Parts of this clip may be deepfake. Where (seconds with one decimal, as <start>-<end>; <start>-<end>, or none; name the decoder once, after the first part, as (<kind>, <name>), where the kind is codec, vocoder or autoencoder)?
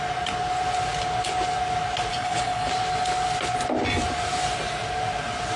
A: 2.1-2.7 (codec, HILCodec)